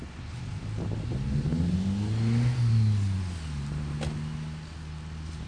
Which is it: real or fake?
real